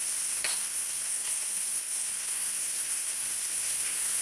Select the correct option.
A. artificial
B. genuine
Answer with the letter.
A